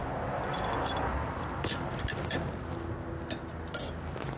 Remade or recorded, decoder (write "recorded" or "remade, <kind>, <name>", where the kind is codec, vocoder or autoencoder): recorded